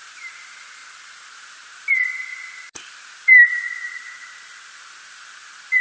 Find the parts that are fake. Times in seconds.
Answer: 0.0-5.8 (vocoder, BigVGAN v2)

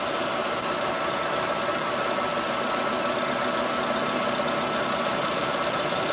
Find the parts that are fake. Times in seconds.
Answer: 0.0-2.3 (vocoder, BigVGAN v2); 4.7-6.1

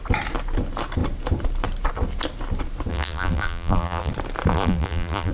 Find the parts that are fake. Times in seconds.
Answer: 2.9-4.1 (vocoder, BigVGAN v2); 4.5-5.3

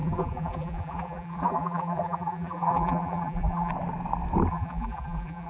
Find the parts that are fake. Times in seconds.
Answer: 0.0-3.7 (vocoder, BigVGAN v2); 4.5-5.5

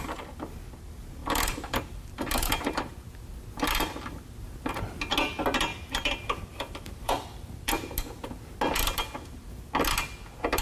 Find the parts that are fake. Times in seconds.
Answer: 1.2-4.7 (vocoder, BigVGAN v2); 5.7-7.9

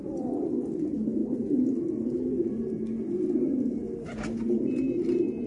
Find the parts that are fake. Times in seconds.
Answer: 0.0-1.2 (vocoder, BigVGAN v2); 4.5-5.5

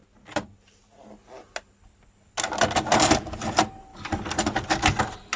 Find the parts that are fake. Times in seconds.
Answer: 3.1-5.4 (vocoder, BigVGAN v2)